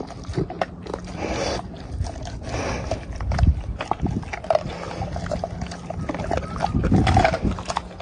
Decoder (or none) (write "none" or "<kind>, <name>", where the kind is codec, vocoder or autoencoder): none